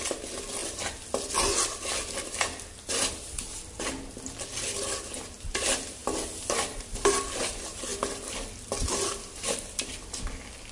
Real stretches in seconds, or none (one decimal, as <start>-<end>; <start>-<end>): 0.0-10.7